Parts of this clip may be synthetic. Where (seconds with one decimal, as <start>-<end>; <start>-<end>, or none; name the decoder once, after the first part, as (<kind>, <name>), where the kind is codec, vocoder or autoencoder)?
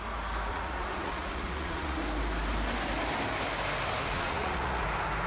0.5-2.0 (vocoder, Vocos); 4.0-4.8